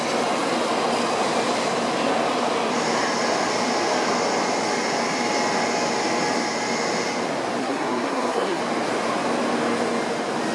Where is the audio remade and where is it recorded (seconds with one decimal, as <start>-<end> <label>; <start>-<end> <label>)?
0.0-7.6 recorded; 7.6-8.6 remade; 8.6-10.5 recorded